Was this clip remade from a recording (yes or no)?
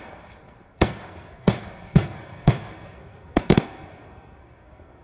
yes